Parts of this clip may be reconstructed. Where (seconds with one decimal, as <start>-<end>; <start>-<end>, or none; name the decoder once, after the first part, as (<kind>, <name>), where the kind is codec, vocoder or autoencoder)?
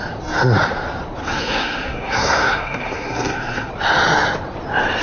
1.2-3.7 (codec, SNAC)